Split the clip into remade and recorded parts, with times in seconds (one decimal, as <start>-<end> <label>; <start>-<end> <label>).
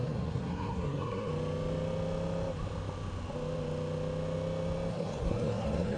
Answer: 0.0-1.3 remade; 1.3-4.9 recorded; 4.9-6.0 remade